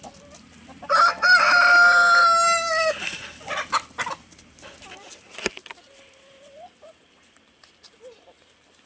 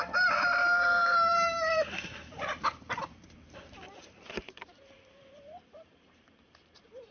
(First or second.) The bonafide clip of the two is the first